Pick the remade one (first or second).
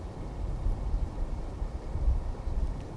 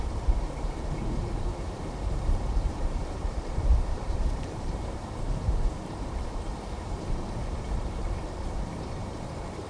second